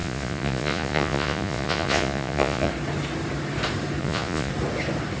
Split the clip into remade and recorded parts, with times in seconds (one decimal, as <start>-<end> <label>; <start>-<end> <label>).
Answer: 0.0-2.7 remade; 2.7-4.0 recorded; 4.0-4.5 remade; 4.5-5.2 recorded